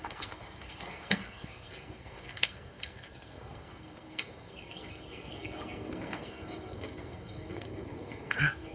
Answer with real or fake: fake